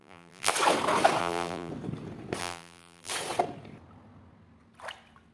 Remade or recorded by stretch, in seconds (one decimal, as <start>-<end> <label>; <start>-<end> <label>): 0.0-0.5 remade; 0.5-1.2 recorded; 1.2-1.7 remade; 1.7-2.4 recorded; 2.4-3.1 remade; 3.1-5.3 recorded